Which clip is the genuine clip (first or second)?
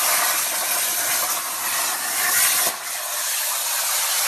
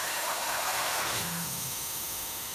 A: first